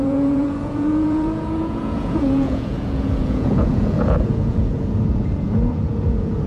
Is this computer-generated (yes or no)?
yes